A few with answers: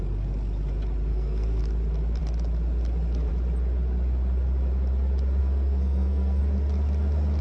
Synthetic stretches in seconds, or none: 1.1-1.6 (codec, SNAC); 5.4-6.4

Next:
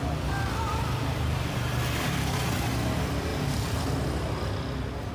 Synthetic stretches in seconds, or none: 0.7-1.8 (vocoder, BigVGAN v2); 3.3-3.9

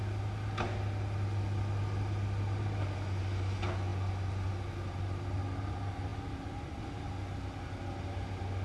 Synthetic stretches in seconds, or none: none